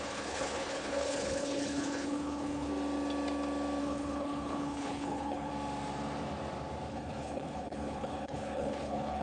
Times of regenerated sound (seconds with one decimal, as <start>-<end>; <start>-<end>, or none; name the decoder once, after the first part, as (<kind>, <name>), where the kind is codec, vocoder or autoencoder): 0.0-2.7 (codec, HILCodec); 3.8-5.5; 6.9-9.2